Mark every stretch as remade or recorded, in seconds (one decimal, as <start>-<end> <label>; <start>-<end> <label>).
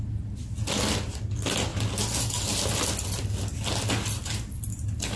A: 0.0-5.2 recorded